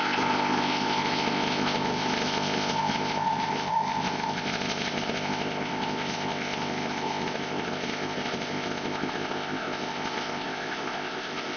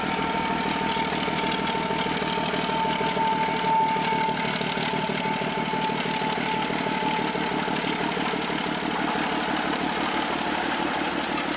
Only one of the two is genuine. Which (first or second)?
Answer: second